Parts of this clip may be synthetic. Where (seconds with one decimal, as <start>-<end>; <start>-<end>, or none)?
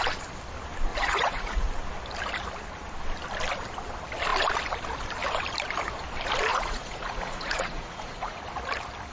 0.9-1.7; 6.5-8.4